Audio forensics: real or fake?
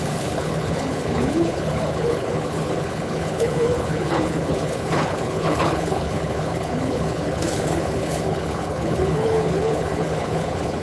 fake